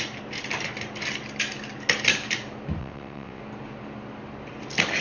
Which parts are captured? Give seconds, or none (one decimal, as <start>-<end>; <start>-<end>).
0.0-2.8; 3.4-5.0